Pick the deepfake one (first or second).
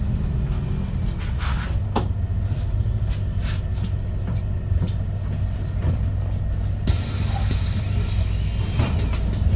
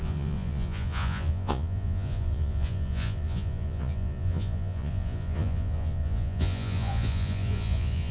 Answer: second